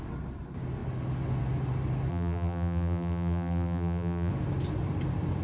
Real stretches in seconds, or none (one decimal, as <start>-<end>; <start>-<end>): 0.0-2.1; 4.3-5.4